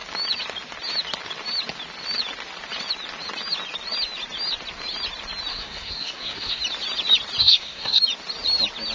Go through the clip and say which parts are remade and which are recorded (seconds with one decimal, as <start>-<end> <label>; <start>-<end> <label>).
0.0-5.5 recorded; 5.5-6.6 remade; 6.6-7.4 recorded; 7.4-8.0 remade; 8.0-8.9 recorded